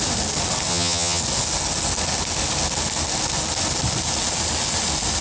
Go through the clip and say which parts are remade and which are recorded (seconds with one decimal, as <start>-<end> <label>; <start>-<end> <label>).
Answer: 0.0-0.7 recorded; 0.7-1.2 remade; 1.2-5.2 recorded